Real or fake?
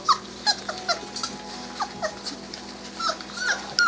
real